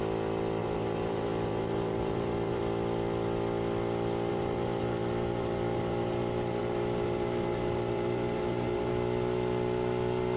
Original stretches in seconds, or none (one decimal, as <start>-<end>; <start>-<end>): 0.0-0.6; 2.6-4.3; 8.9-10.4